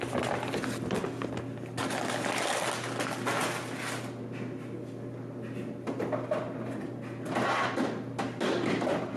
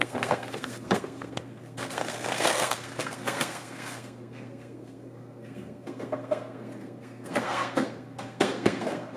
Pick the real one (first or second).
first